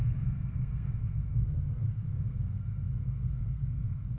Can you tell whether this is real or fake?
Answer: fake